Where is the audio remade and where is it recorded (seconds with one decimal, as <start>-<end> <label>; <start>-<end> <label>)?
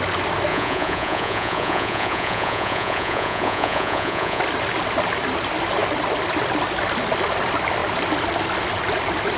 0.0-0.5 recorded; 0.5-4.4 remade; 4.4-9.4 recorded